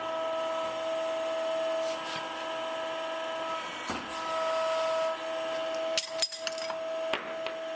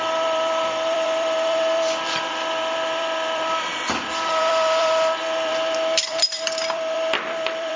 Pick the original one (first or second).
first